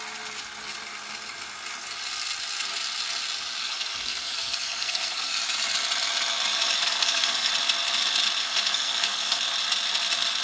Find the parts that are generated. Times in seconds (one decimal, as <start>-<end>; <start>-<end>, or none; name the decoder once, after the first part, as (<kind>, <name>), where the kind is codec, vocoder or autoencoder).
3.6-5.3 (codec, SNAC); 6.8-7.5; 8.4-9.4